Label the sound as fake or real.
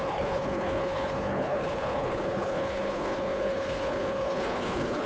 fake